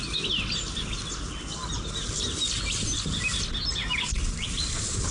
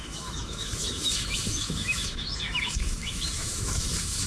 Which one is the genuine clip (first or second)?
first